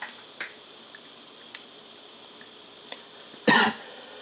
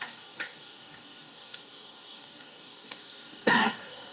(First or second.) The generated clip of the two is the second